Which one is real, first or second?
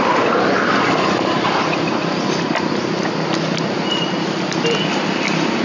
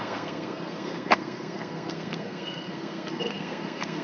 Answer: first